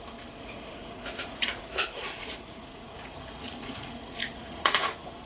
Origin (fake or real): fake